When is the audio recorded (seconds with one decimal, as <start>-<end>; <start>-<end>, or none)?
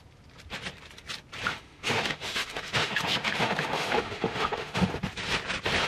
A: 0.0-1.5; 4.9-5.9